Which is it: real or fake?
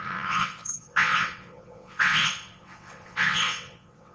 fake